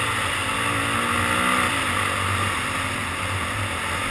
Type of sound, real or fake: real